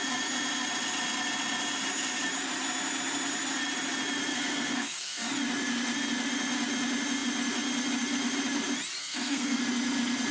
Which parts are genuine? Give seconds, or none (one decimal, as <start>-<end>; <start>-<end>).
0.0-4.3; 5.3-9.0; 9.6-10.3